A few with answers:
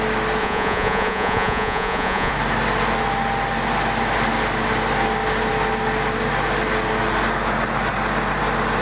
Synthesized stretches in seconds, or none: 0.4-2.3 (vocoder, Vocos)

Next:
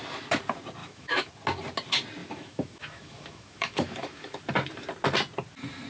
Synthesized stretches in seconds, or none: 0.8-1.3 (autoencoder, DAC-VAE); 2.2-4.4

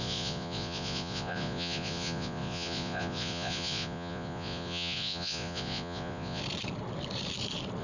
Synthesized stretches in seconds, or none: 0.0-6.4 (vocoder, Vocos)

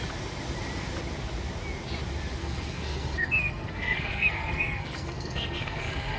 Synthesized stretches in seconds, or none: 2.4-6.2 (codec, SNAC)